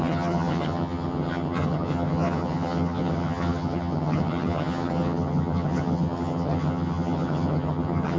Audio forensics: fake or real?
fake